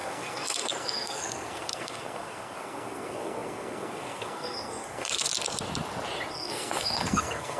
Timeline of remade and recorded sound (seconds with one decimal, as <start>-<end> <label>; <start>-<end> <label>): 0.0-5.3 remade; 5.3-6.3 recorded; 6.3-7.6 remade